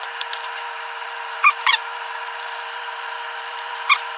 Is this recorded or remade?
remade